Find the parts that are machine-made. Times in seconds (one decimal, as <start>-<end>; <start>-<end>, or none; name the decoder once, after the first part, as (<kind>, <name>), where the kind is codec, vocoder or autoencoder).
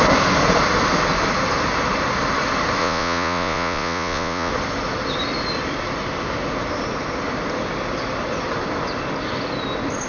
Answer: 2.8-4.5 (vocoder, Vocos)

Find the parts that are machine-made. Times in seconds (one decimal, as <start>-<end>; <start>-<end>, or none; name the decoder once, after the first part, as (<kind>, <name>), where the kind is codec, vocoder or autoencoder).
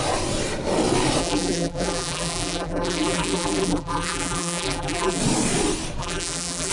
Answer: 1.2-5.2 (vocoder, BigVGAN v2); 6.0-6.7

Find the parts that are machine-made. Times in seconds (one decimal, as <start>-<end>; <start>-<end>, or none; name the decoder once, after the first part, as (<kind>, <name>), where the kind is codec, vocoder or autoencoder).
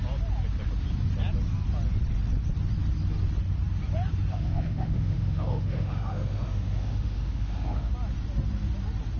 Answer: 4.3-7.9 (autoencoder, DAC-VAE)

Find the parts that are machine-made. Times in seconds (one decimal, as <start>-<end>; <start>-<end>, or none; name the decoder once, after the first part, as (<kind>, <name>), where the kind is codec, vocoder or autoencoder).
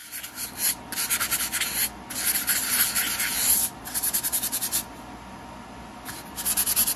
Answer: none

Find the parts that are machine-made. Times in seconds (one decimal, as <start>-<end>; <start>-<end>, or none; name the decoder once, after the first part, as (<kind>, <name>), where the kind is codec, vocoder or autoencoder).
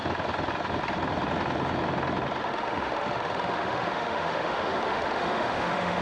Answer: 2.4-6.0 (autoencoder, DAC-VAE)